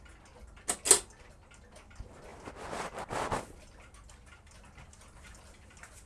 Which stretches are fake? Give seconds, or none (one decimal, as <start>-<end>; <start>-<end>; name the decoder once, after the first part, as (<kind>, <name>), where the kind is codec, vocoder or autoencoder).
none